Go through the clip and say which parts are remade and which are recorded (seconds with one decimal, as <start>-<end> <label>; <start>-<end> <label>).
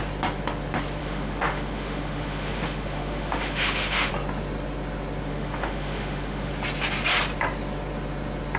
0.0-1.0 recorded; 1.0-4.1 remade; 4.1-5.3 recorded; 5.3-6.5 remade; 6.5-8.6 recorded